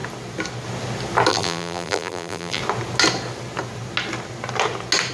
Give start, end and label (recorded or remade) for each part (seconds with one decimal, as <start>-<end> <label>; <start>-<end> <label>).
0.0-1.3 recorded; 1.3-2.6 remade; 2.6-5.1 recorded